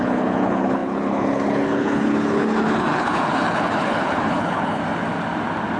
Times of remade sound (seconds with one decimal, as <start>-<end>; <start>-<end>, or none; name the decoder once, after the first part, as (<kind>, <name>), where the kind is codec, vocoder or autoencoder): 0.0-4.8 (codec, HILCodec)